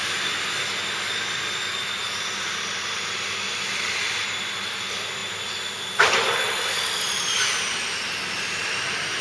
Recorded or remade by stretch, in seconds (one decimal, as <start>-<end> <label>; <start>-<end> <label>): 0.0-9.2 recorded